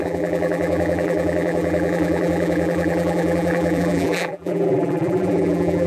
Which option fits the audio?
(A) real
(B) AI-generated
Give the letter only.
B